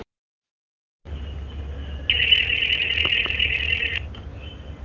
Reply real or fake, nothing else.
real